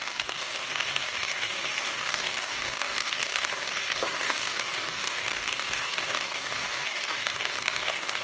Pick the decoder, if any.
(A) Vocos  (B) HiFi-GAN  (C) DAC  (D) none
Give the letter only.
C